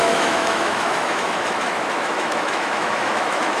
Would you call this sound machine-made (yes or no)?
yes